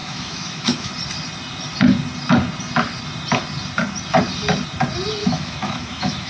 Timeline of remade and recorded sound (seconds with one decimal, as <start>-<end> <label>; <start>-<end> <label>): 0.0-0.9 remade; 0.9-5.2 recorded; 5.2-6.3 remade